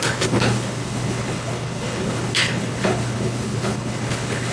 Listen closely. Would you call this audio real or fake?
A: fake